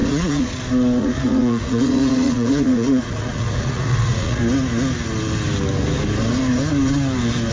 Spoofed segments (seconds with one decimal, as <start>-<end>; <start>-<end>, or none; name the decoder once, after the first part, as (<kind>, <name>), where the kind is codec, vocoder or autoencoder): 0.0-0.6 (vocoder, Vocos); 1.0-4.4